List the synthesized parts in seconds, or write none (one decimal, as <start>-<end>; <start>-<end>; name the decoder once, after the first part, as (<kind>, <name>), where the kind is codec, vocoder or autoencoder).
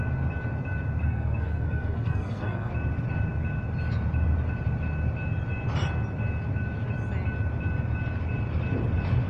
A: 1.0-2.7 (codec, SNAC)